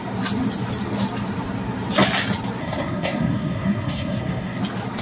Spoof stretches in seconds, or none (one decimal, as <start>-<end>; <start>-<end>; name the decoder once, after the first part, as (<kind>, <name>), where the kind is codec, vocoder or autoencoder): 2.6-4.6 (codec, SNAC)